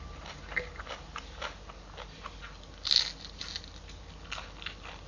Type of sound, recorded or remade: recorded